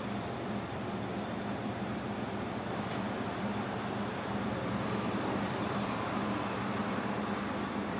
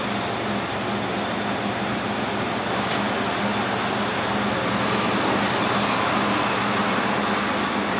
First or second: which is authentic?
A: second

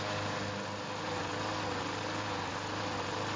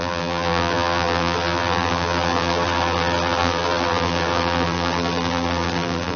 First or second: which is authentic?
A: first